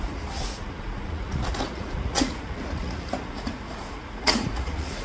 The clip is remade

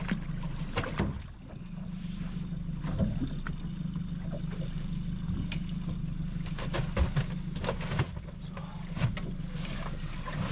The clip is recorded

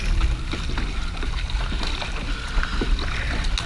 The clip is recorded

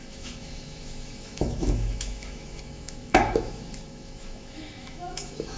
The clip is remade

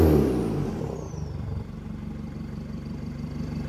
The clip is remade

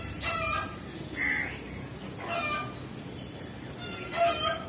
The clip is recorded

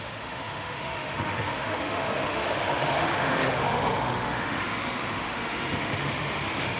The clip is remade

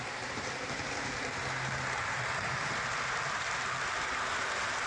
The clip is recorded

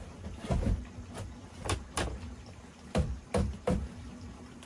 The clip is recorded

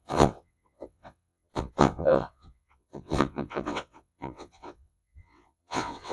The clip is remade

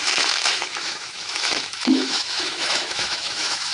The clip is remade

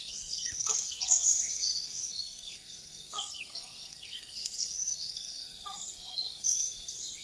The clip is remade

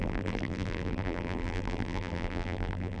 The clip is remade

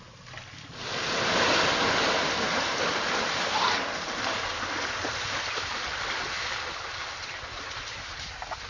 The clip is remade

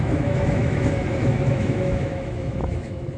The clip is remade